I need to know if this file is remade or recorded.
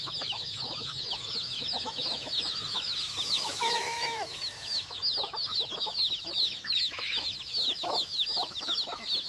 remade